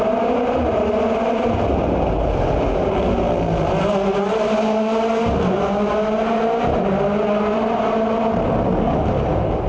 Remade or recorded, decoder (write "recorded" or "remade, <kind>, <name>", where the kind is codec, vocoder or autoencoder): recorded